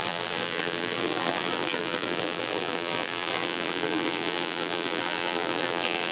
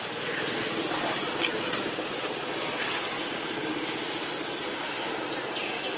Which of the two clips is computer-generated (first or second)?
first